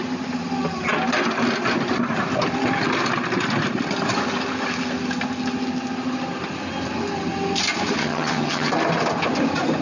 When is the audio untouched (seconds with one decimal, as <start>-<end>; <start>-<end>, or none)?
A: 0.0-8.0; 8.7-9.8